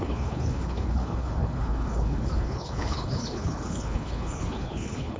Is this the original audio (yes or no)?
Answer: no